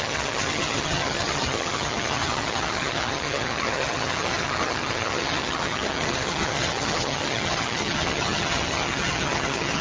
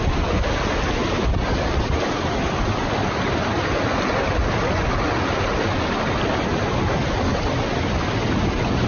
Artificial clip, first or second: first